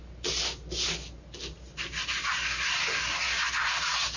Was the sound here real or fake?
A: real